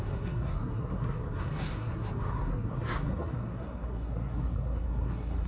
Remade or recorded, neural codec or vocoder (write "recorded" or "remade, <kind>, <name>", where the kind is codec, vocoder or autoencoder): remade, codec, SNAC